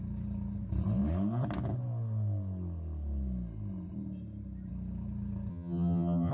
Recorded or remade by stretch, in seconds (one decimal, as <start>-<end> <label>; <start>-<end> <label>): 0.0-5.5 recorded; 5.5-6.3 remade